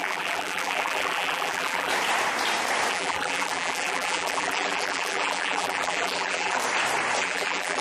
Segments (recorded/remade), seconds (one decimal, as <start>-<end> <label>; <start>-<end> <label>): 0.0-1.9 remade; 1.9-2.9 recorded; 2.9-6.6 remade; 6.6-7.2 recorded; 7.2-7.8 remade